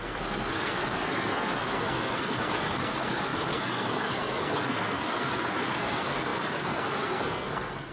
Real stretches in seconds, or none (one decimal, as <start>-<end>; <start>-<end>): none

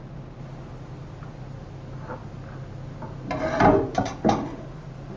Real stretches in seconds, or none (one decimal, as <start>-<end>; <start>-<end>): 0.0-5.2